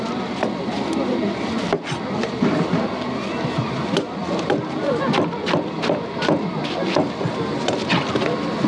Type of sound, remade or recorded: recorded